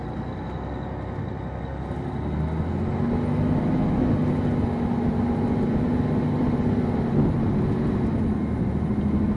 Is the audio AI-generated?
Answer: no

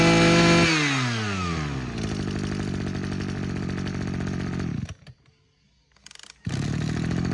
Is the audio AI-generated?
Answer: no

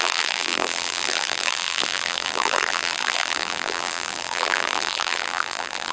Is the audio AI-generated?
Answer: yes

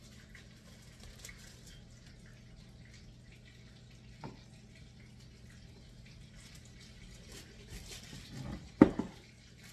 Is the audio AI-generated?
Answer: no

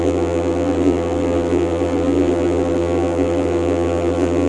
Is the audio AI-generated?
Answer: yes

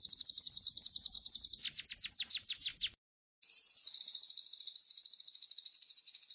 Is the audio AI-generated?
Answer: no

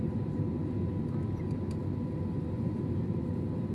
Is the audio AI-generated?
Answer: no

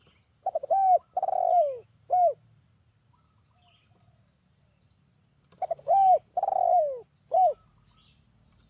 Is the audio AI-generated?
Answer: no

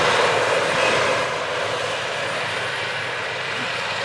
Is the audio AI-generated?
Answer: no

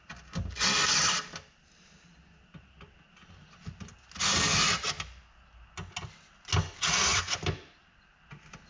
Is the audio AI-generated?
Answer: no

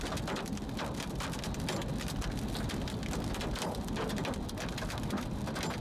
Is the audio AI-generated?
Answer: no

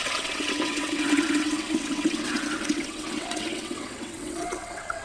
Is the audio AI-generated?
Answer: yes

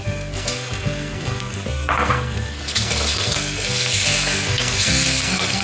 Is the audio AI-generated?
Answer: yes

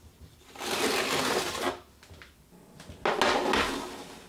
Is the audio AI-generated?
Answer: no